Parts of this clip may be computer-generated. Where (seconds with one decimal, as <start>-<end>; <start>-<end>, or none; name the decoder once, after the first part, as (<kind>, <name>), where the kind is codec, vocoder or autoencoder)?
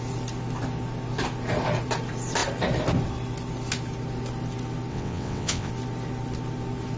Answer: 4.9-5.7 (vocoder, WaveNeXt)